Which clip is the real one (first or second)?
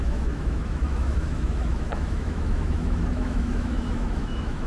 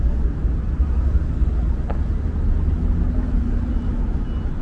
second